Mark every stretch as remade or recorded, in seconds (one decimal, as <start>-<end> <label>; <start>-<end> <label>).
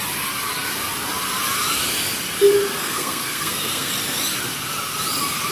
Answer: 0.0-2.8 recorded; 2.8-3.9 remade; 3.9-5.5 recorded